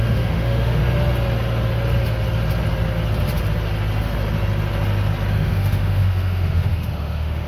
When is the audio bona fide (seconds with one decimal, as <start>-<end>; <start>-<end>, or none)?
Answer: 0.8-5.3